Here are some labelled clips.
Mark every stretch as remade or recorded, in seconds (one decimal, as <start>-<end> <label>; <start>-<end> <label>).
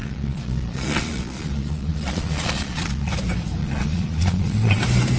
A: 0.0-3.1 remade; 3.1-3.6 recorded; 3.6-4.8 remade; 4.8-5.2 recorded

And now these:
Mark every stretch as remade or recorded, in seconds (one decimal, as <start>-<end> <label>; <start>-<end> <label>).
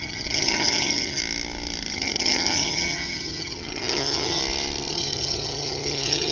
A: 0.0-1.2 remade; 1.2-1.9 recorded; 1.9-4.4 remade; 4.4-4.9 recorded; 4.9-6.3 remade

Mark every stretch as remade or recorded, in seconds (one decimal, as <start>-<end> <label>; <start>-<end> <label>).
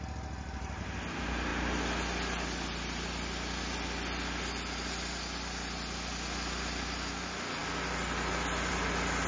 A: 0.0-9.3 recorded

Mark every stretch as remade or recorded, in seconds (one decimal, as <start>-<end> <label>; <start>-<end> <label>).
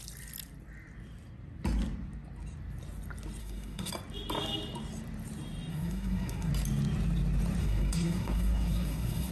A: 0.0-3.4 recorded; 3.4-3.9 remade; 3.9-5.7 recorded; 5.7-6.5 remade; 6.5-7.6 recorded; 7.6-9.3 remade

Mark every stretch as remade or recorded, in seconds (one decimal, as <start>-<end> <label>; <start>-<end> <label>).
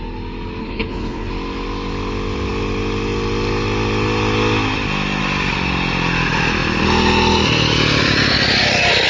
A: 0.0-0.6 recorded; 0.6-1.3 remade; 1.3-9.1 recorded